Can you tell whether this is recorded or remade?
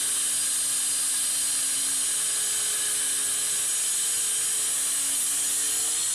recorded